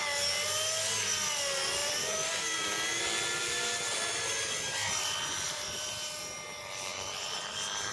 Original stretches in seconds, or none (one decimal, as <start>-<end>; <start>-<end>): 0.0-1.8; 3.0-4.8; 5.9-6.9